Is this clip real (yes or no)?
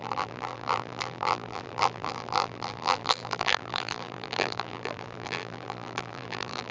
no